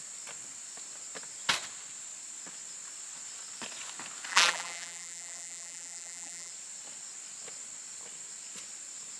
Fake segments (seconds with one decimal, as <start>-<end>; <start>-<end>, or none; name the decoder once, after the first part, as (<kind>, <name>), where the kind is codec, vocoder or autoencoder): 4.3-6.5 (vocoder, BigVGAN v2)

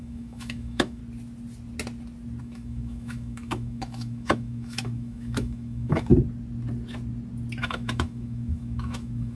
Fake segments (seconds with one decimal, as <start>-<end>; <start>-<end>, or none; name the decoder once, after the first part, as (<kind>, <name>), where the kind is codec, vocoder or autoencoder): 0.0-1.0 (autoencoder, DAC-VAE); 2.4-6.1; 7.6-9.3

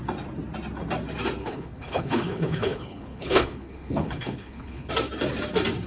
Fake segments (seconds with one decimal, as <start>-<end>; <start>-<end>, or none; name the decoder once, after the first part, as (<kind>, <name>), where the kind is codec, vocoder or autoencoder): 1.4-4.9 (codec, HILCodec)

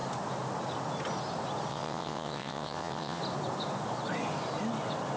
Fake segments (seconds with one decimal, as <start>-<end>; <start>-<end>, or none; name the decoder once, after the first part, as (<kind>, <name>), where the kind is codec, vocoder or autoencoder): 1.7-3.2 (vocoder, WaveNeXt)

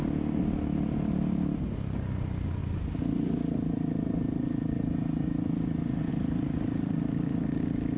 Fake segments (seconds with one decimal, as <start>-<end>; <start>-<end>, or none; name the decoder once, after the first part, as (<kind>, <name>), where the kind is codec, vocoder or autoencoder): none

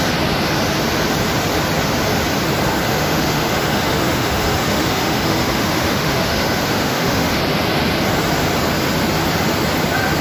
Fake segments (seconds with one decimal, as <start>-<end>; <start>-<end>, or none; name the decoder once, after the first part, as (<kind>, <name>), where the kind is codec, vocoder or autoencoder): 2.8-7.4 (autoencoder, DAC-VAE)